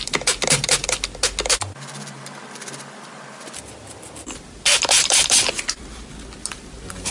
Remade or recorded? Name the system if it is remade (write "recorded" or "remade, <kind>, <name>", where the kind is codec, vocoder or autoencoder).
recorded